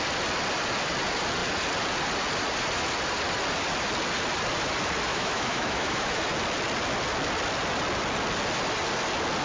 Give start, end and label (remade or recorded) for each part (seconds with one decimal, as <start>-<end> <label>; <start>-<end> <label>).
0.0-5.1 recorded; 5.1-6.2 remade; 6.2-9.4 recorded